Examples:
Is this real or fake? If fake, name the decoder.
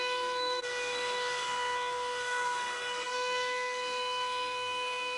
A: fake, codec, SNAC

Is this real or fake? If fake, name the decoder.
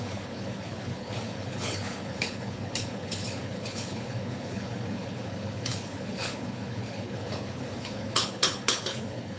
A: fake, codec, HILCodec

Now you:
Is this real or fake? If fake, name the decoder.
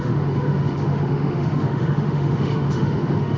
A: fake, autoencoder, DAC-VAE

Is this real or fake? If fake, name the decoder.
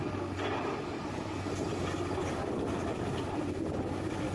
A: real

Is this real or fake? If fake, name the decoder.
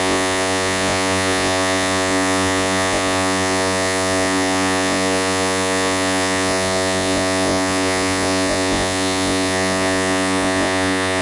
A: fake, vocoder, Vocos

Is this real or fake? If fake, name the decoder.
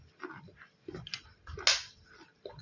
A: real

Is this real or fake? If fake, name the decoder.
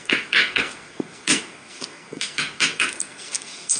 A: fake, codec, SNAC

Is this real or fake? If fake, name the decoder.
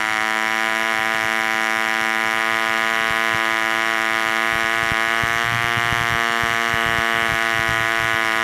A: fake, autoencoder, DAC-VAE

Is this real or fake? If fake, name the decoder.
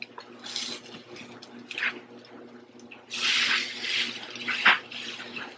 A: real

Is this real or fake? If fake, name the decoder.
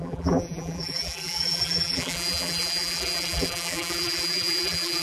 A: fake, vocoder, BigVGAN v2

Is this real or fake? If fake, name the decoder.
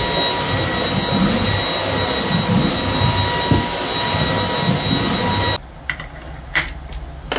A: real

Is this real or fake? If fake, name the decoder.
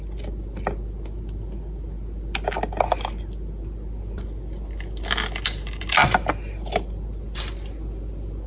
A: real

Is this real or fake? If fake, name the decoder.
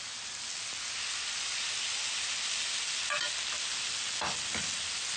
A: real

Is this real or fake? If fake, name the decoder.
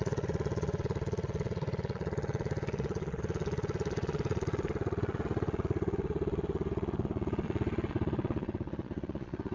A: fake, vocoder, Vocos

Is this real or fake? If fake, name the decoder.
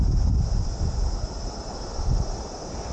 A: real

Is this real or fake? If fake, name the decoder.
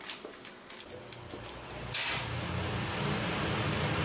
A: real